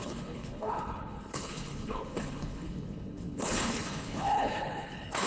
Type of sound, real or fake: fake